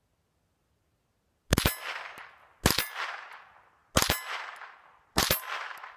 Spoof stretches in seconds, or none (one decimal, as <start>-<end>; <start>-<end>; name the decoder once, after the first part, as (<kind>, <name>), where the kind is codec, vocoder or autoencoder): none